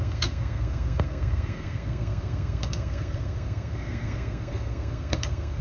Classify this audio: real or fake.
fake